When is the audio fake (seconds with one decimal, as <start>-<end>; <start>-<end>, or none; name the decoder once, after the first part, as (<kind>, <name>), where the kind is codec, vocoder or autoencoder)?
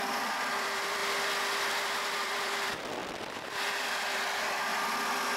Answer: 0.0-1.0 (vocoder, BigVGAN v2); 1.8-3.0; 3.7-4.7